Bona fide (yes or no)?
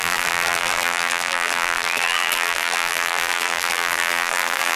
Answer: no